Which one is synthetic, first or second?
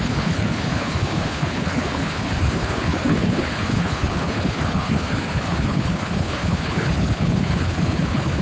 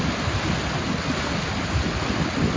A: first